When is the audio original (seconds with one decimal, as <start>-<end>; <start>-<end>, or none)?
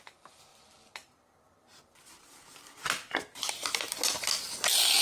0.0-0.5; 3.5-5.0